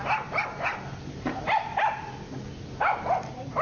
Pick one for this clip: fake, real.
real